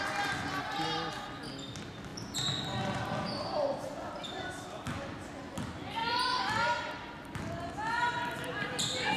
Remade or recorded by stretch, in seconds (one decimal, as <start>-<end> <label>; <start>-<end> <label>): 0.0-9.2 recorded